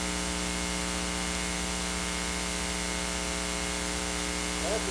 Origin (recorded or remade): recorded